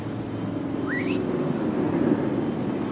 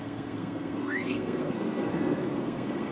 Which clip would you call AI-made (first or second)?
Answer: second